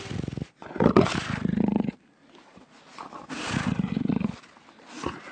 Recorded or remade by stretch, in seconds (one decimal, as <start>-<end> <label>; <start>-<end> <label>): 0.0-5.3 recorded